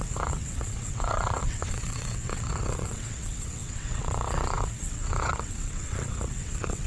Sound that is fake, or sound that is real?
fake